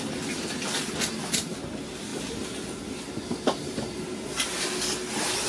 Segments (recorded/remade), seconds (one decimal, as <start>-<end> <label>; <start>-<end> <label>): 0.0-5.5 recorded

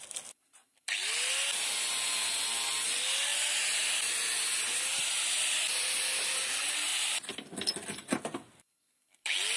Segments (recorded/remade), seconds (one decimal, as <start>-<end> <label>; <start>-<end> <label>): 0.0-9.6 recorded

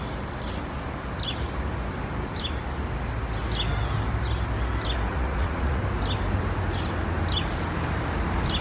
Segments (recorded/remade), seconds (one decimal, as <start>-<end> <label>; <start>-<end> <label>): 0.0-5.1 recorded; 5.1-5.8 remade; 5.8-8.6 recorded

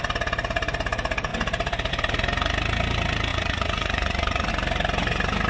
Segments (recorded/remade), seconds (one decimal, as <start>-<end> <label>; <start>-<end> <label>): 0.0-3.3 recorded; 3.3-4.5 remade; 4.5-5.5 recorded

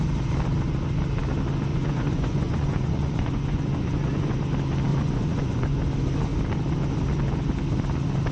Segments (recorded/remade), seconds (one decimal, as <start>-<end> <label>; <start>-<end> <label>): 0.0-1.7 recorded; 1.7-4.4 remade; 4.4-4.9 recorded; 4.9-5.8 remade; 5.8-8.3 recorded

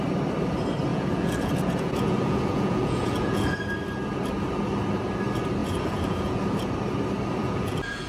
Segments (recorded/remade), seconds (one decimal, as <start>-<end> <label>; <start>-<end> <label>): 0.0-0.9 recorded; 0.9-3.6 remade; 3.6-5.6 recorded; 5.6-6.7 remade; 6.7-7.4 recorded; 7.4-8.1 remade